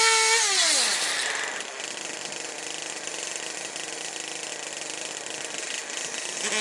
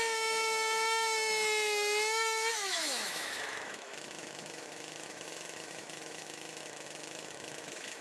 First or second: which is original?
first